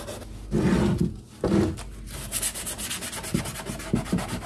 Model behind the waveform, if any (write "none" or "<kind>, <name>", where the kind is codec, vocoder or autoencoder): none